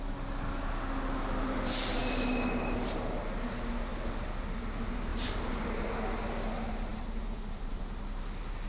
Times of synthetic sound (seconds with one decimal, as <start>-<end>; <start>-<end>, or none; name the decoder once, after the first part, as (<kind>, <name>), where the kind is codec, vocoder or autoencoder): 5.1-5.9 (vocoder, BigVGAN v2); 6.9-7.8

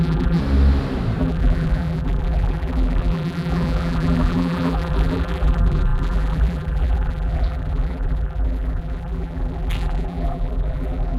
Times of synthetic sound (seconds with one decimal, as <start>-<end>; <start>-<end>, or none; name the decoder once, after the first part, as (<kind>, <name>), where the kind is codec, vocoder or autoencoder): 0.0-0.4 (vocoder, BigVGAN v2); 1.2-11.2

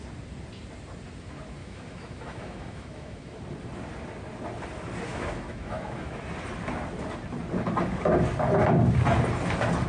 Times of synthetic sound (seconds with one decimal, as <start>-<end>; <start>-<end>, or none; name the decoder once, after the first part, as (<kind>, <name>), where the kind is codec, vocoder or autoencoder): 1.6-3.4 (autoencoder, DAC-VAE); 5.1-6.2

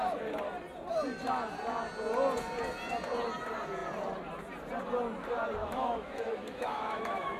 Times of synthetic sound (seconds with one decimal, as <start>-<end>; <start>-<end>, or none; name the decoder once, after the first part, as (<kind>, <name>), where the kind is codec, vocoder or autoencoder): 5.6-7.4 (autoencoder, DAC-VAE)

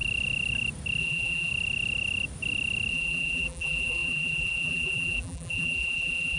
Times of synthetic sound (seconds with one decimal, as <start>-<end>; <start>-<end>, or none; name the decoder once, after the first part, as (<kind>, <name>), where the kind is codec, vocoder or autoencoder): 1.0-1.5 (vocoder, BigVGAN v2); 2.9-6.4